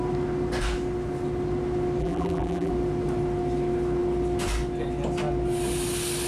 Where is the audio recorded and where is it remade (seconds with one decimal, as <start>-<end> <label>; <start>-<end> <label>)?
0.0-2.0 recorded; 2.0-2.7 remade; 2.7-6.3 recorded